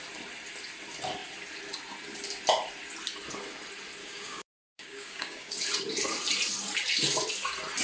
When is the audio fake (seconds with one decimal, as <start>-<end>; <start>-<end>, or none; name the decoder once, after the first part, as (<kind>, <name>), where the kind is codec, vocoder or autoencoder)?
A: 4.0-5.6 (codec, DAC)